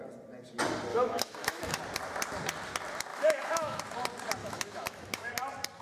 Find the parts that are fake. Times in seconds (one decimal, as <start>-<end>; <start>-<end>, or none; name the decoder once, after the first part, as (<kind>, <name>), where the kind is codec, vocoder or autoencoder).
0.9-1.8 (autoencoder, DAC-VAE); 3.1-3.8; 4.4-5.3